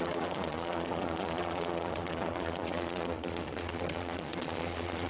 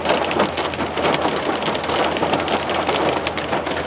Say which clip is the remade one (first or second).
first